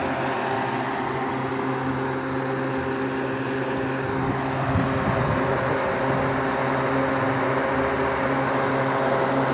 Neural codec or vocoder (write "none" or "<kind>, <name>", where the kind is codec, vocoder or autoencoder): none